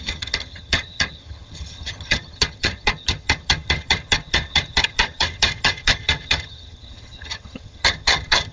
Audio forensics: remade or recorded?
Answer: remade